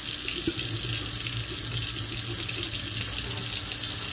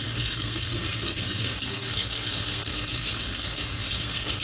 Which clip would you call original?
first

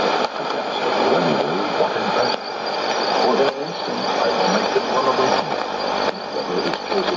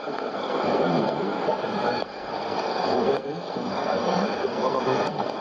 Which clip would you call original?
first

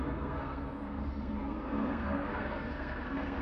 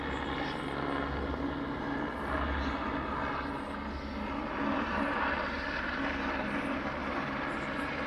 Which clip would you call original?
second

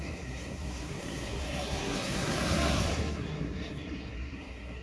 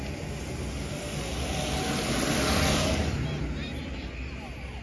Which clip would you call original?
second